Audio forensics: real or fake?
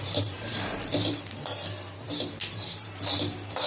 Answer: fake